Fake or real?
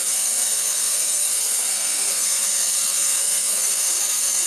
fake